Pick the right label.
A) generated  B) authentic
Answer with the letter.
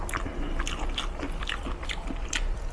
B